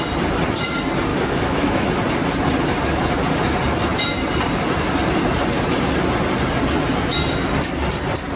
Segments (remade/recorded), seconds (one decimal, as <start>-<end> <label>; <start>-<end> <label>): 0.0-1.1 recorded; 1.1-1.9 remade; 1.9-8.4 recorded